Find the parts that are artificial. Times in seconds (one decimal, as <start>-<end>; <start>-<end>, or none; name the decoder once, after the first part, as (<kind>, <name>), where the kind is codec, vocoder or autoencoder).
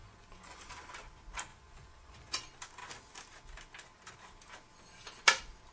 0.0-0.7 (vocoder, Vocos); 1.5-2.4